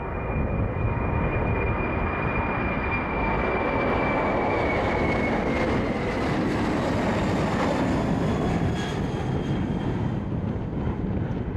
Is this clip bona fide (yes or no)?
yes